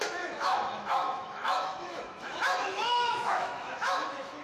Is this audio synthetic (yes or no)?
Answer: yes